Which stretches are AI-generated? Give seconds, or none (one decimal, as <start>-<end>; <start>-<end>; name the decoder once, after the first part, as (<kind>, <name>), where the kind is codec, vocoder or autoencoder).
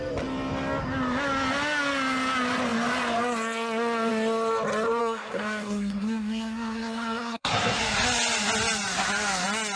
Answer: 5.0-7.8 (codec, SNAC)